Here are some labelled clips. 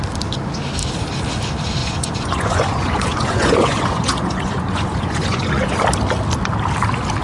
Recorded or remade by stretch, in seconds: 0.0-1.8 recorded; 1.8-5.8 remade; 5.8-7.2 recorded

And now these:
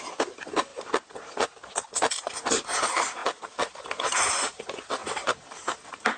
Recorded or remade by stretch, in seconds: 0.0-6.2 recorded

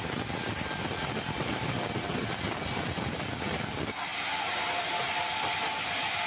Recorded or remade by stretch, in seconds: 0.0-6.3 recorded

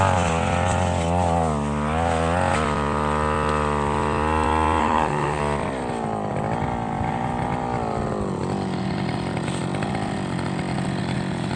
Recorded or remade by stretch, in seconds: 0.0-4.8 recorded; 4.8-5.4 remade; 5.4-11.6 recorded

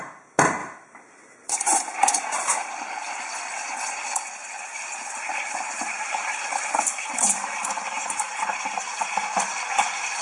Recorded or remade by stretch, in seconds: 0.0-0.6 recorded; 0.6-2.1 remade; 2.1-5.3 recorded; 5.3-10.2 remade

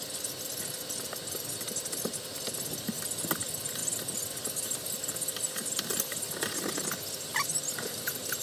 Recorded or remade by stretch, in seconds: 0.0-8.4 recorded

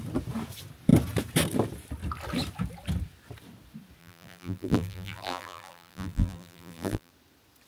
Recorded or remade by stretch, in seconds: 0.0-4.0 recorded; 4.0-7.1 remade; 7.1-7.7 recorded

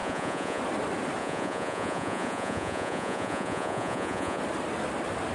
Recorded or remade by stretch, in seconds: 0.0-0.6 remade; 0.6-1.2 recorded; 1.2-4.4 remade; 4.4-5.3 recorded